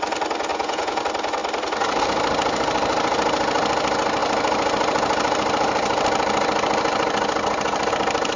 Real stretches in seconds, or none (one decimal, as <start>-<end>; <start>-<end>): 0.0-0.5; 1.0-8.4